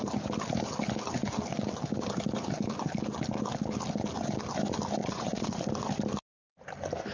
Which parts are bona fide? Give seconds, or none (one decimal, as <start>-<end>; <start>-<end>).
0.0-5.0; 5.7-7.1